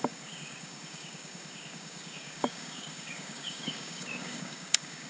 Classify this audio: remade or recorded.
remade